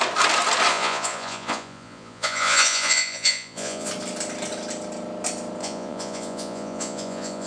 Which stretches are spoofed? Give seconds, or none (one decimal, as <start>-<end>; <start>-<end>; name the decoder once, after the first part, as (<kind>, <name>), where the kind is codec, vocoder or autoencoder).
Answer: 0.7-3.9 (vocoder, Vocos); 5.6-7.5